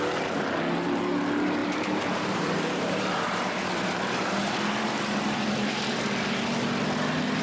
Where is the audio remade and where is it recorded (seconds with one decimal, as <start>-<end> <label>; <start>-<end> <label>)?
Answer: 0.0-1.6 recorded; 1.6-6.0 remade; 6.0-7.4 recorded